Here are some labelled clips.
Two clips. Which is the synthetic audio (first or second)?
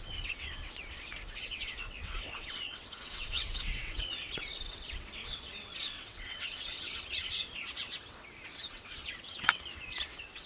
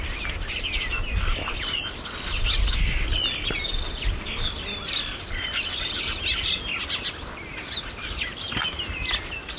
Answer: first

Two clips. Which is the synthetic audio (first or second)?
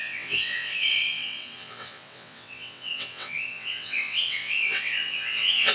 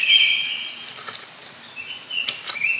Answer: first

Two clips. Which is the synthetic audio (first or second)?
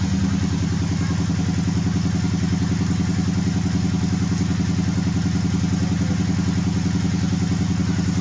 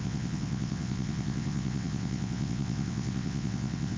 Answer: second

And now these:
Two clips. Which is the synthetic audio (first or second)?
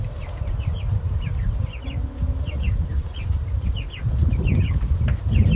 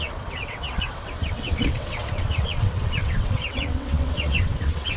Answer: second